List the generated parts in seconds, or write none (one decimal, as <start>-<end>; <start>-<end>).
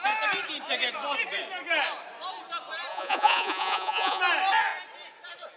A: 2.9-4.2